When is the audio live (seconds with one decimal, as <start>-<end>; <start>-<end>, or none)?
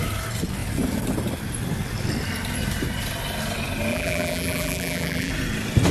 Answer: 0.0-3.9; 5.3-5.9